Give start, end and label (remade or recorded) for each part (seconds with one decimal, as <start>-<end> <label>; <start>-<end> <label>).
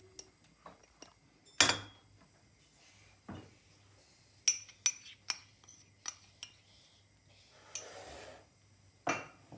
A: 0.0-9.6 recorded